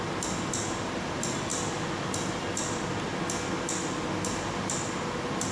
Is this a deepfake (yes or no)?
no